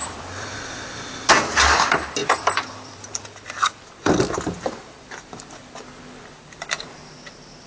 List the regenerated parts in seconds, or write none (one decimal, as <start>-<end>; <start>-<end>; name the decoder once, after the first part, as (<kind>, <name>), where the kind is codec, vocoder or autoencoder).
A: 0.0-1.3 (vocoder, BigVGAN v2); 2.2-6.8